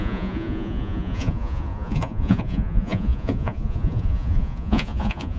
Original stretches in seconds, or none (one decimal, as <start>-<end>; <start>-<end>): none